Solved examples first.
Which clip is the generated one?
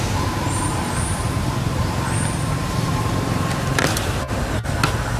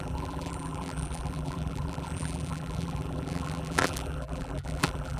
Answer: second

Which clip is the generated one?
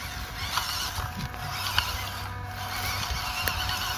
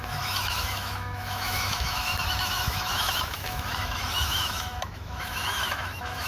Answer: second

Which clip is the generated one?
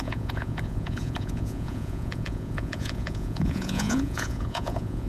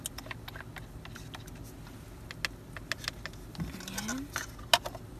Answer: first